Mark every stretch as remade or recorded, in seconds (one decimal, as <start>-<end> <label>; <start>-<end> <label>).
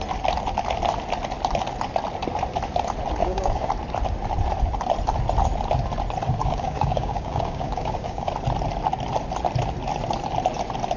0.0-3.2 recorded; 3.2-3.7 remade; 3.7-6.4 recorded; 6.4-8.3 remade; 8.3-11.0 recorded